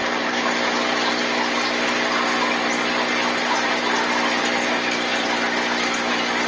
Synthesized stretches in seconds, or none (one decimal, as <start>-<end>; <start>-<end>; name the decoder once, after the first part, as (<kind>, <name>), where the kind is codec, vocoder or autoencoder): none